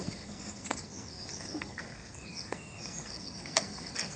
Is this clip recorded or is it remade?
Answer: remade